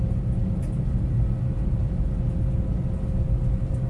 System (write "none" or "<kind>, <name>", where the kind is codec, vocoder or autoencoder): none